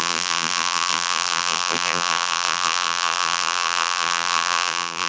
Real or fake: fake